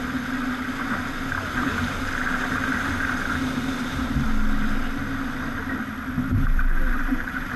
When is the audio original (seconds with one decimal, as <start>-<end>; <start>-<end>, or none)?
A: 0.0-1.4; 2.0-6.3